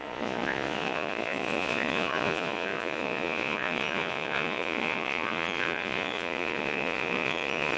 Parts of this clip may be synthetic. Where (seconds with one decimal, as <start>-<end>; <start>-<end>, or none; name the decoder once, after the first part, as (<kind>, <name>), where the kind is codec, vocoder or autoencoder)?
0.0-7.8 (vocoder, Vocos)

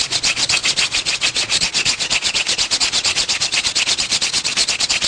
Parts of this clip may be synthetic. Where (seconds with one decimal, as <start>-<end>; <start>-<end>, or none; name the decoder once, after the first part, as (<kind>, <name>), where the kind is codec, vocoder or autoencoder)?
0.0-5.1 (vocoder, Vocos)

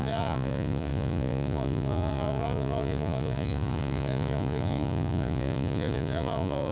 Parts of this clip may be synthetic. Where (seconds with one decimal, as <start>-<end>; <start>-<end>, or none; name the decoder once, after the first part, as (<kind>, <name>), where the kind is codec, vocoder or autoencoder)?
0.0-6.7 (vocoder, Vocos)

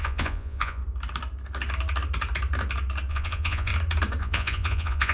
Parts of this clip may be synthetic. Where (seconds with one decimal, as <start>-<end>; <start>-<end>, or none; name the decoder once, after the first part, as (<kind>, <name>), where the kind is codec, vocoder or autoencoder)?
0.0-0.8 (vocoder, Vocos); 3.1-3.7; 4.2-5.1

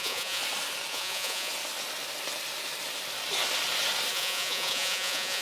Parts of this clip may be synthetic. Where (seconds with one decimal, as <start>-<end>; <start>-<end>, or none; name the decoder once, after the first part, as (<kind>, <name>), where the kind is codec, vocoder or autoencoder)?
0.0-0.4 (vocoder, Vocos); 0.9-1.5; 4.1-5.4

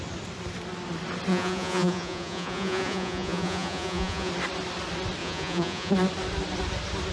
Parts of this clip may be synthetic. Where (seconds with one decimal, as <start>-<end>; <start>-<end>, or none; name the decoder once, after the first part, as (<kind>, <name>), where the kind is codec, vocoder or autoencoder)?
1.3-4.3 (vocoder, Vocos); 5.2-5.9